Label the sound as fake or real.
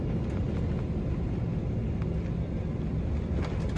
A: real